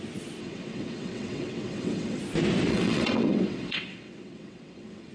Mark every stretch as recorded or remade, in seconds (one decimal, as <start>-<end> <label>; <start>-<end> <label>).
0.0-0.4 recorded; 0.4-2.2 remade; 2.2-2.7 recorded; 2.7-5.1 remade